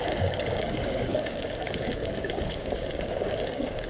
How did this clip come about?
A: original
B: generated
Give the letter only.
B